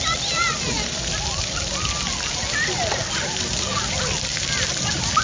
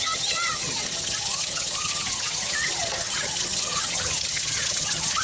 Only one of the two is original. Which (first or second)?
first